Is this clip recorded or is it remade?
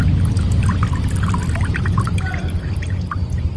recorded